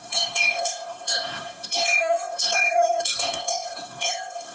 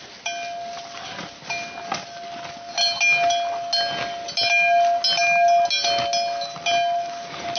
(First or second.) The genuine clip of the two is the second